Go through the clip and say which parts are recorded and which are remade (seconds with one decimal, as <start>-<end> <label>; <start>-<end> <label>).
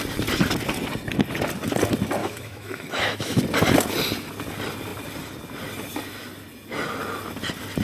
0.0-2.2 recorded; 2.2-3.4 remade; 3.4-7.8 recorded